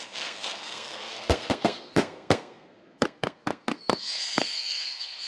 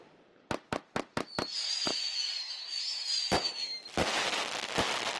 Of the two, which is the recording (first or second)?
second